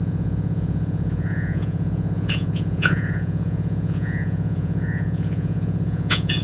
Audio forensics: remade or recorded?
remade